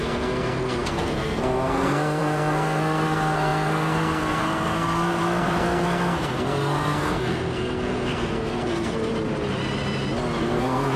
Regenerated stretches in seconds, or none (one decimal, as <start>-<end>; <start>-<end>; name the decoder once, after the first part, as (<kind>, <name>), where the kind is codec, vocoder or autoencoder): 0.0-9.1 (codec, SNAC); 10.4-11.0